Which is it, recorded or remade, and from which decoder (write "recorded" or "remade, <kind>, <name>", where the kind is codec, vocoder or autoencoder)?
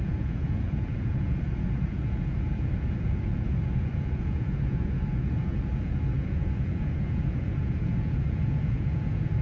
remade, vocoder, Vocos